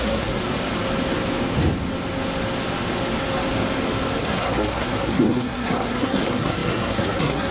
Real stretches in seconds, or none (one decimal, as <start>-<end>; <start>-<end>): 0.4-4.2